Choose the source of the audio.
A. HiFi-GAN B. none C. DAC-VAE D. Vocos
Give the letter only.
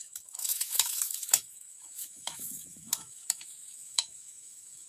C